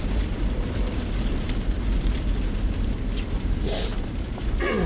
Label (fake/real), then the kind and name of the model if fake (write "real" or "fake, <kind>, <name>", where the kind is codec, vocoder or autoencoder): real